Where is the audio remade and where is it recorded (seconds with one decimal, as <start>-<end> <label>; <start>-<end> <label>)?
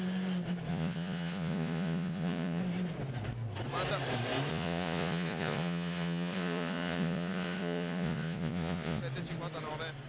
0.0-0.7 recorded; 0.7-2.6 remade; 2.6-4.5 recorded; 4.5-9.0 remade; 9.0-10.1 recorded